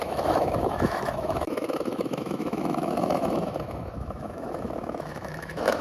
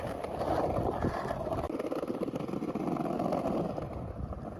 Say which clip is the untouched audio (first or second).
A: second